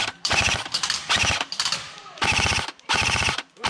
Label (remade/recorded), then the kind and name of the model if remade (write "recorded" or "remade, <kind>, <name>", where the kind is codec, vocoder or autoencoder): remade, vocoder, BigVGAN v2